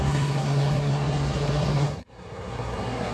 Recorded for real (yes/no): no